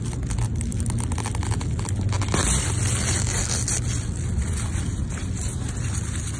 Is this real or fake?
real